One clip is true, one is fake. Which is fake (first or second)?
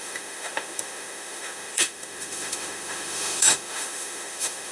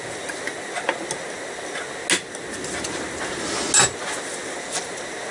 first